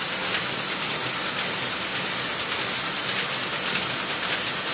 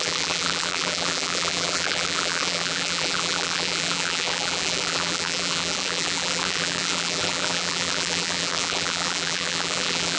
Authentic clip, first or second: first